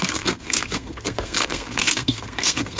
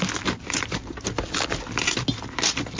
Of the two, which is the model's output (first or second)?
first